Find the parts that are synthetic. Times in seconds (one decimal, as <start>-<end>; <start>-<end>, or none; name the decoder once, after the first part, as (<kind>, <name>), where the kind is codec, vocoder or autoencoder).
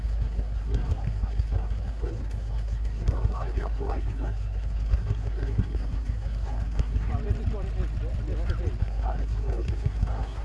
0.0-7.1 (codec, SNAC); 8.8-10.4